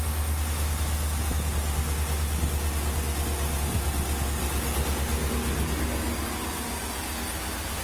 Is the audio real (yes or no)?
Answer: yes